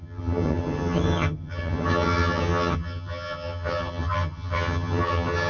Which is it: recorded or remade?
remade